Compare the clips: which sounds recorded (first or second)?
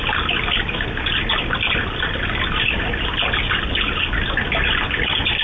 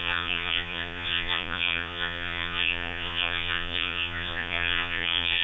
first